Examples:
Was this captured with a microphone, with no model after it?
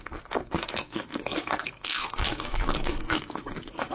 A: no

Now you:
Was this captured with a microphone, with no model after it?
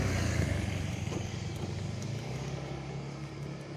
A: no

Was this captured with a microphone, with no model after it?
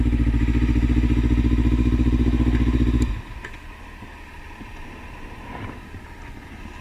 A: yes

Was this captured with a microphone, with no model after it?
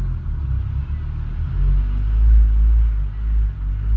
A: yes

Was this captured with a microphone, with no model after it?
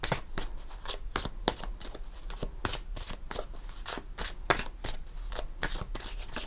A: yes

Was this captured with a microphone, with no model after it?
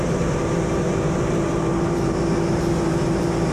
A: no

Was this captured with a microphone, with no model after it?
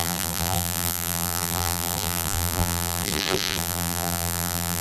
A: no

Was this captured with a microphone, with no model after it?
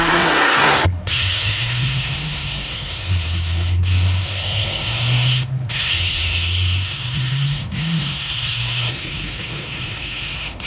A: no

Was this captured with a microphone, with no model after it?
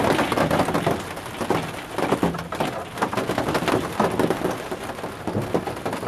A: yes